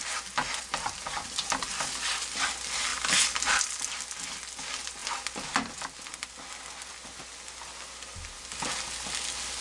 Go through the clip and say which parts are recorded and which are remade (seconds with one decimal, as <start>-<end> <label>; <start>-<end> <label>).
0.0-9.6 recorded